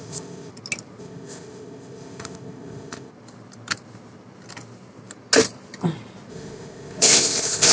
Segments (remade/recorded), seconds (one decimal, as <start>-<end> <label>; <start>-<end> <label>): 0.0-0.5 remade; 0.5-1.0 recorded; 1.0-3.1 remade; 3.1-6.3 recorded; 6.3-7.7 remade